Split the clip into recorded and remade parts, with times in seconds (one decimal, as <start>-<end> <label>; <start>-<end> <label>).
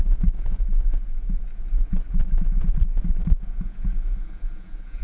0.0-2.2 remade; 2.2-3.4 recorded; 3.4-5.0 remade